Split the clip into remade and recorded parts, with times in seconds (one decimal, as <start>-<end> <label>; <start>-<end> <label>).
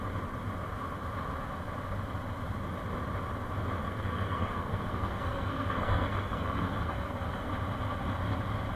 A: 0.0-3.8 recorded; 3.8-7.5 remade; 7.5-8.8 recorded